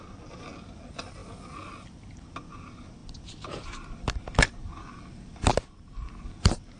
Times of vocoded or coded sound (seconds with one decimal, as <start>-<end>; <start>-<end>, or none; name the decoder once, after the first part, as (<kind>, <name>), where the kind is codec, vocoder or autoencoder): none